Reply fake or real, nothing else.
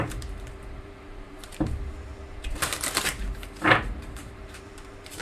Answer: fake